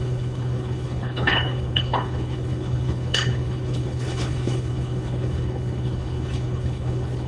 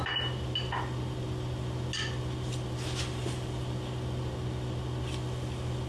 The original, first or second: second